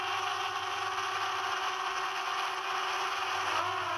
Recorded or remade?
recorded